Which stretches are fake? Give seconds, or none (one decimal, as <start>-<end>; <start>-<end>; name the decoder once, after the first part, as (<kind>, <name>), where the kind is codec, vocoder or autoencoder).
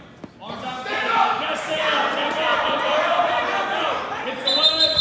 none